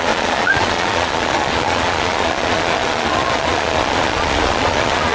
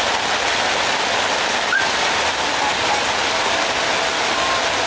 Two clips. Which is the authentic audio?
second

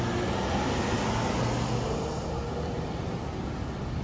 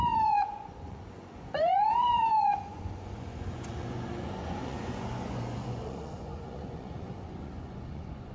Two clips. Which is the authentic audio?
first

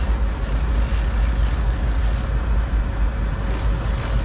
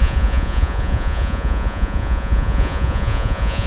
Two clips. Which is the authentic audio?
first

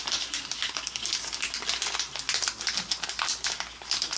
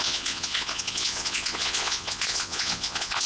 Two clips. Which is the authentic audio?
first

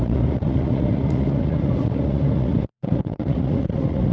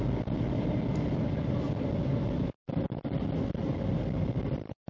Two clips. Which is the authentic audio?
second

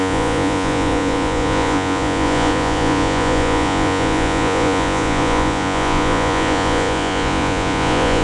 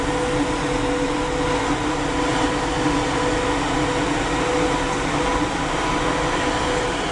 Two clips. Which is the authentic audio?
second